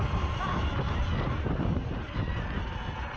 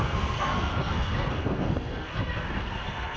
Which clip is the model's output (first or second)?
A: second